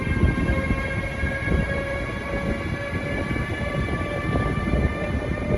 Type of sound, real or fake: real